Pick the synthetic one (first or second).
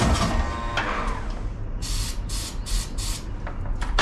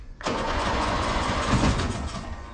second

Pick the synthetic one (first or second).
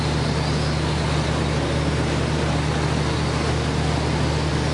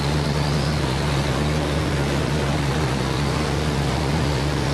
second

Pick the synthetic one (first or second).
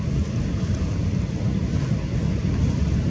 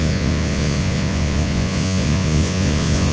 second